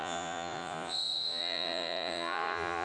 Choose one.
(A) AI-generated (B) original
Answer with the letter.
A